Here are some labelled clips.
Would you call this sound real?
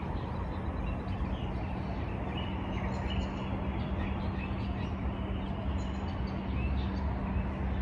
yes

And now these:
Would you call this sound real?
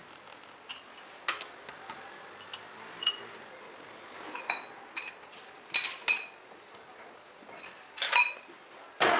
yes